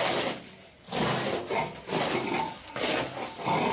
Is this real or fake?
real